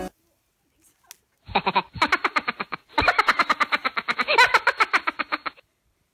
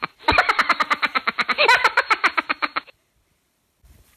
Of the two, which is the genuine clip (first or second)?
first